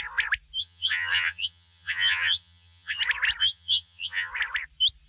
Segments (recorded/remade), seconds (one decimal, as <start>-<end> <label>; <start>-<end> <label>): 0.0-0.6 recorded; 0.6-3.0 remade; 3.0-3.4 recorded; 3.4-4.3 remade; 4.3-5.1 recorded